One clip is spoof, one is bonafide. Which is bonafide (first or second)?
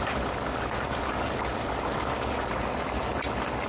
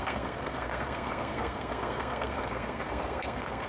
first